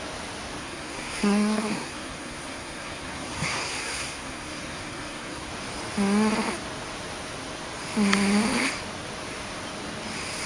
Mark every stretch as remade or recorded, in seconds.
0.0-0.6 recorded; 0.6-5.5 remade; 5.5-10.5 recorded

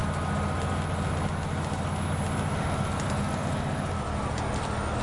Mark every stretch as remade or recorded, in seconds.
0.0-5.0 recorded

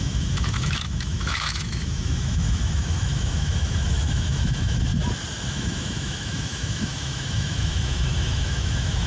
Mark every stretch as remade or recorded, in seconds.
0.0-4.9 remade; 4.9-5.5 recorded; 5.5-9.1 remade

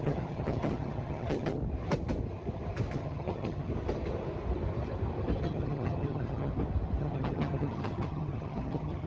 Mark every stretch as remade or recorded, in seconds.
0.0-1.6 remade; 1.6-2.9 recorded; 2.9-3.7 remade; 3.7-5.4 recorded; 5.4-6.5 remade; 6.5-7.0 recorded; 7.0-9.1 remade